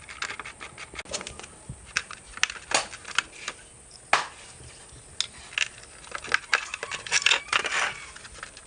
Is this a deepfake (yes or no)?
no